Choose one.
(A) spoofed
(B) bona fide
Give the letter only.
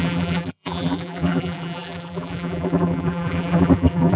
A